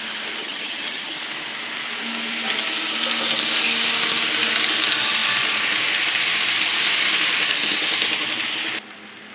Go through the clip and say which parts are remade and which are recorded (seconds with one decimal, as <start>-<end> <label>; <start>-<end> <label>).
0.0-0.4 recorded; 0.4-1.2 remade; 1.2-9.3 recorded